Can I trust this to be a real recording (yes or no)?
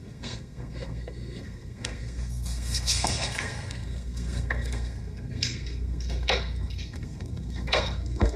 no